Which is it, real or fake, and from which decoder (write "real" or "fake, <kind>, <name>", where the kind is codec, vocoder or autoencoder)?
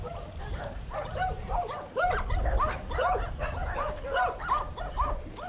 real